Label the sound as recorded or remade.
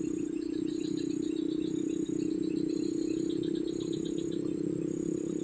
recorded